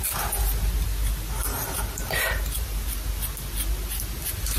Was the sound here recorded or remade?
recorded